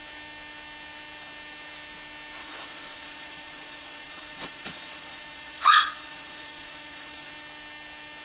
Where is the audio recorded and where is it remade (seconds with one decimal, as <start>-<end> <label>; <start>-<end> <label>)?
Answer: 0.0-2.4 recorded; 2.4-7.3 remade; 7.3-8.2 recorded